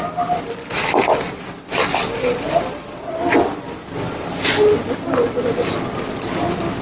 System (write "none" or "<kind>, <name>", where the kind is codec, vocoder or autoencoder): none